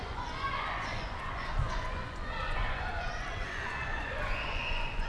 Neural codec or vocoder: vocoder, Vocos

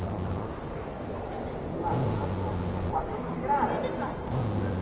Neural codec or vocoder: none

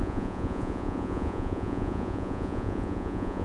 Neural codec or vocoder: vocoder, Vocos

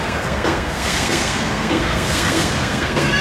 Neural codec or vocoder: codec, SNAC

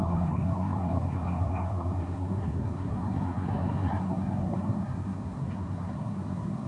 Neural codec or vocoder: codec, SNAC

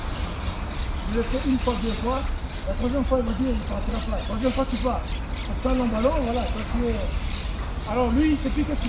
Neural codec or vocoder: none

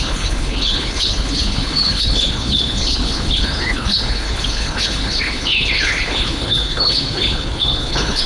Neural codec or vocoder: codec, HILCodec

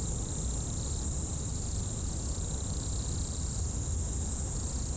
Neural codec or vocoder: none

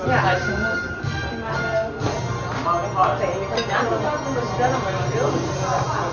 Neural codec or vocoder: none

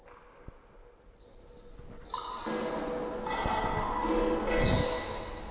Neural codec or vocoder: none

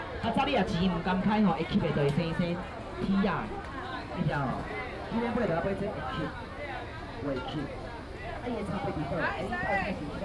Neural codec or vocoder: none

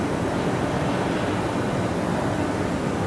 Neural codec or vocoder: none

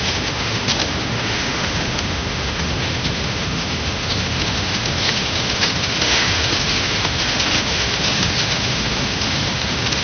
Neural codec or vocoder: autoencoder, DAC-VAE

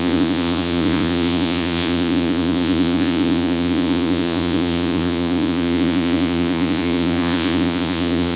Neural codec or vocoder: vocoder, Vocos